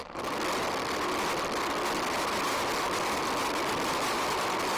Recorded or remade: recorded